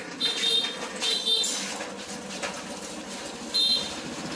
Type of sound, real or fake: real